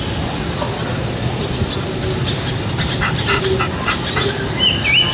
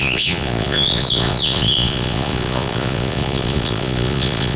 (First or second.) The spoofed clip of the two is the second